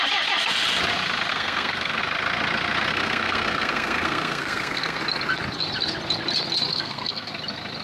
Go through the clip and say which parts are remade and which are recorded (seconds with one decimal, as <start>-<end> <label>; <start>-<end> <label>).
0.0-1.3 recorded; 1.3-2.0 remade; 2.0-2.9 recorded; 2.9-5.0 remade; 5.0-6.7 recorded; 6.7-7.3 remade; 7.3-7.8 recorded